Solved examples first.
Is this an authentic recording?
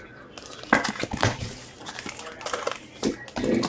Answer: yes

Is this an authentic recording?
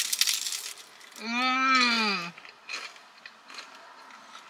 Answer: yes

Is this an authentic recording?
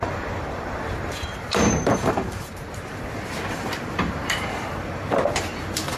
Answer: no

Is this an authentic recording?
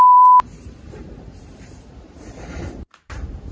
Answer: no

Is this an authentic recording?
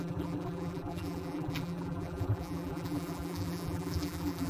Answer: no